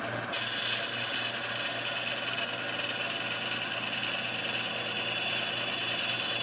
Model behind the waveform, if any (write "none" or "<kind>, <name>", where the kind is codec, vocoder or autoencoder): none